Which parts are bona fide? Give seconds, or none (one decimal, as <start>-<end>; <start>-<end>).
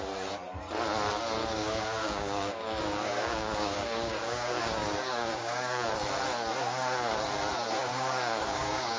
0.0-1.4; 5.9-7.9